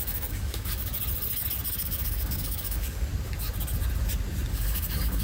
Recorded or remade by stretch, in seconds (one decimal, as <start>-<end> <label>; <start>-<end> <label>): 0.0-0.9 remade; 0.9-1.8 recorded; 1.8-3.1 remade; 3.1-4.5 recorded; 4.5-5.2 remade